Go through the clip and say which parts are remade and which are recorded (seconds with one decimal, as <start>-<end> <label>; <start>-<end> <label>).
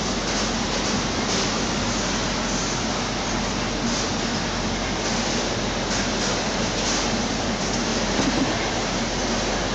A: 0.0-9.7 recorded